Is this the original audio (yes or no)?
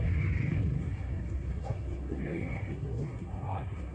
no